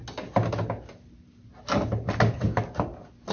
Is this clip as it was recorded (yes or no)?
yes